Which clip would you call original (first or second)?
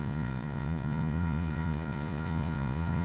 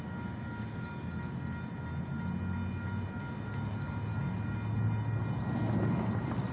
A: second